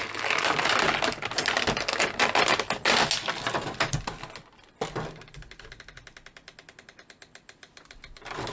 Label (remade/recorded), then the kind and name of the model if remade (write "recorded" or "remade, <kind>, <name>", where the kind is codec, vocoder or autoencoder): recorded